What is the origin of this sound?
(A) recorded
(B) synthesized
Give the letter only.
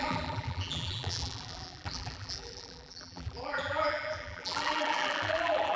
B